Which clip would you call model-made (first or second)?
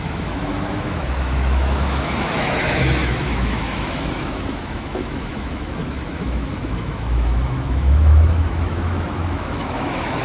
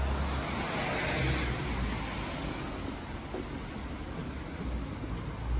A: first